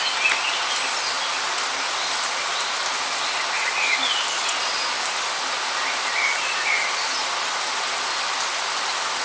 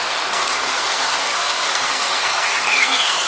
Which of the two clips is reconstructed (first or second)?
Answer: second